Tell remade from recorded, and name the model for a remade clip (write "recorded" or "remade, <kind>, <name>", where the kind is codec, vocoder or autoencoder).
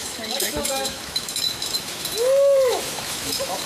remade, autoencoder, DAC-VAE